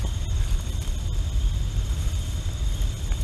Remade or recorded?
recorded